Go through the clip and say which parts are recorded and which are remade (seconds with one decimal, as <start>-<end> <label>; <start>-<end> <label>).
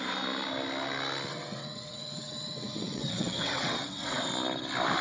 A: 0.0-1.3 recorded; 1.3-4.3 remade; 4.3-5.0 recorded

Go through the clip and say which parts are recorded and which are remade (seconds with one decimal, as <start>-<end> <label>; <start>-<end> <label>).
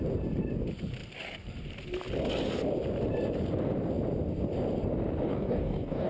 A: 0.0-5.3 recorded; 5.3-6.1 remade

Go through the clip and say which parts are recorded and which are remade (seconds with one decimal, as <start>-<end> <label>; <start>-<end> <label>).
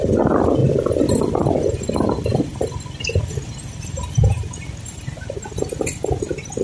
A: 0.0-6.6 recorded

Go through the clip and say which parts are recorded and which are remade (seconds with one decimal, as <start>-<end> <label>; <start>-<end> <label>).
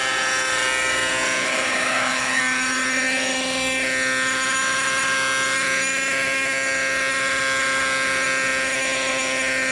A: 0.0-1.4 recorded; 1.4-2.4 remade; 2.4-9.7 recorded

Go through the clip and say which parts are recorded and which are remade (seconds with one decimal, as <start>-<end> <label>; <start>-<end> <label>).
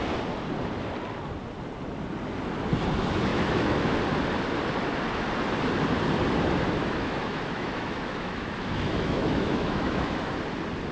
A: 0.0-3.3 recorded; 3.3-4.0 remade; 4.0-6.8 recorded; 6.8-10.3 remade; 10.3-10.9 recorded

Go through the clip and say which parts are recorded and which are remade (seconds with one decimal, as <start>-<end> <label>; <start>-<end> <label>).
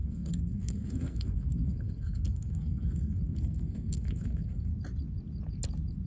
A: 0.0-4.7 remade; 4.7-6.1 recorded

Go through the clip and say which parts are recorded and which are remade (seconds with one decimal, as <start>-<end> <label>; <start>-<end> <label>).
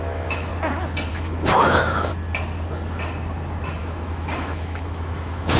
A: 0.0-0.5 remade; 0.5-1.1 recorded; 1.1-2.1 remade; 2.1-3.8 recorded; 3.8-5.6 remade